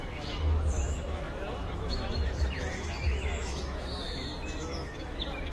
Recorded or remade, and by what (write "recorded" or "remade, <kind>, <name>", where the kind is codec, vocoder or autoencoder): remade, autoencoder, DAC-VAE